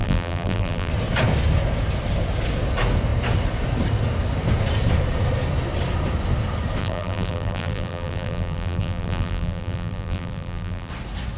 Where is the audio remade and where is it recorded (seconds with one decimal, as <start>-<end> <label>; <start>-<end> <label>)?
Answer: 0.0-0.9 remade; 0.9-6.8 recorded; 6.8-10.9 remade; 10.9-11.4 recorded